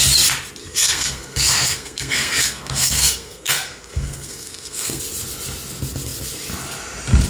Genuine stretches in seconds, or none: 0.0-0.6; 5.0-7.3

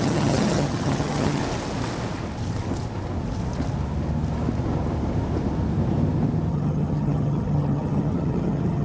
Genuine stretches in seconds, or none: 1.4-6.5

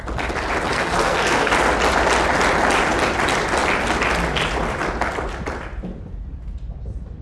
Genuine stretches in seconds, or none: 0.0-0.7; 1.5-7.2

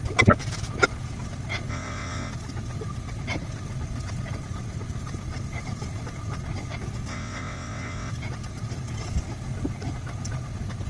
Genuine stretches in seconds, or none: 0.0-1.7; 2.3-7.1; 8.1-10.9

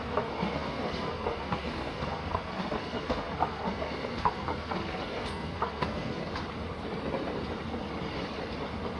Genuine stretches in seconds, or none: 6.2-9.0

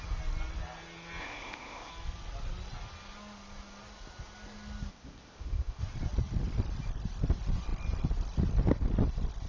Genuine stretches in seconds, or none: 0.0-1.2; 1.9-4.9; 5.8-9.5